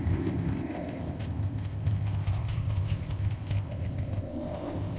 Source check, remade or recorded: remade